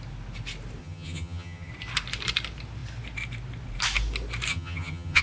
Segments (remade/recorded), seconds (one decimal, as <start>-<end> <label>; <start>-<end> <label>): 0.0-0.8 recorded; 0.8-1.7 remade; 1.7-4.5 recorded; 4.5-5.2 remade